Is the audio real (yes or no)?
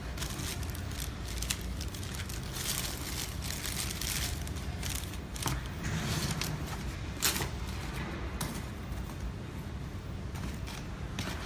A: yes